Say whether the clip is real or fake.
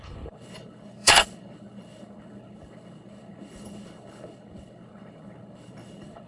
fake